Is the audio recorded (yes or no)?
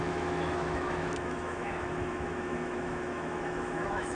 no